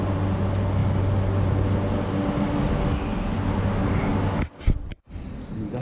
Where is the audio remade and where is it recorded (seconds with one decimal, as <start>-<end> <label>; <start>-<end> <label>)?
0.0-5.8 recorded